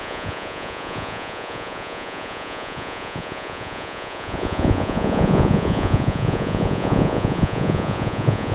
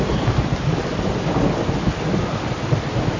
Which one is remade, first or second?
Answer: first